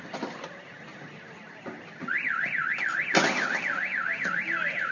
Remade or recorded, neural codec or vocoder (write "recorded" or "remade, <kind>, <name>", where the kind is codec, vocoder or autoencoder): recorded